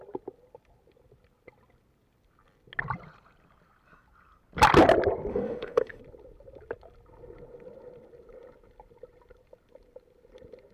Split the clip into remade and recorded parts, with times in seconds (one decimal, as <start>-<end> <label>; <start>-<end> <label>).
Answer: 0.0-5.3 recorded; 5.3-6.0 remade; 6.0-10.7 recorded